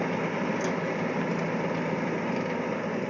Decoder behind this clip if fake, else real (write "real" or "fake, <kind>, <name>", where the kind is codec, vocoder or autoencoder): real